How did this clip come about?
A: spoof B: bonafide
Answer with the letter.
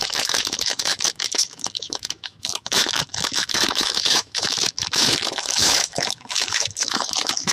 A